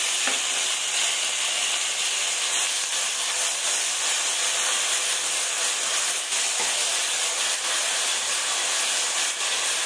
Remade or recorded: recorded